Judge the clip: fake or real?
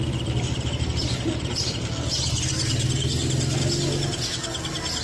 real